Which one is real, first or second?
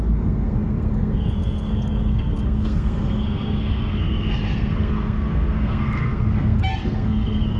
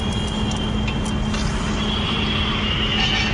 second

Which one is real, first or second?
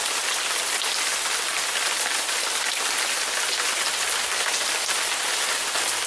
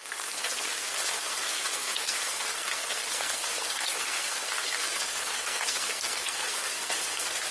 first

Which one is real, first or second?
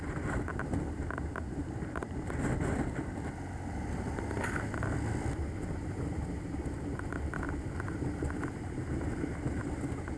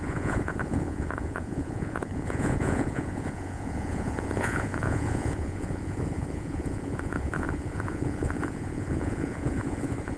first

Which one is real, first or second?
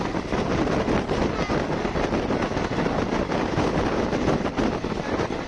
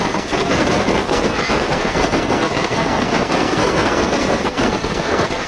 first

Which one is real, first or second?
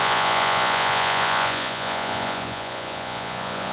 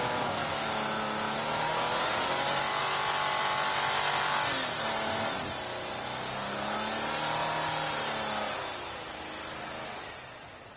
second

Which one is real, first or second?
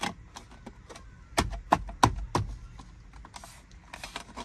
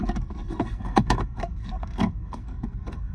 first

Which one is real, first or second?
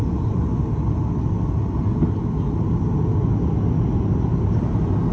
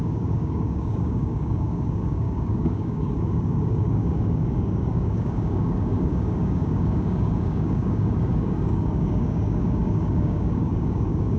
first